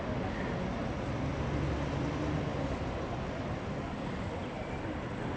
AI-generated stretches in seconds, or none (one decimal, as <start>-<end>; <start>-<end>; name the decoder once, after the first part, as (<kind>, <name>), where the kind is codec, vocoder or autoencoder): none